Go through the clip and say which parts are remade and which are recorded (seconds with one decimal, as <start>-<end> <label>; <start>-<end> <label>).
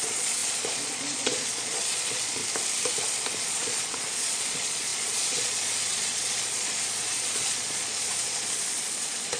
0.0-2.4 remade; 2.4-3.4 recorded; 3.4-9.4 remade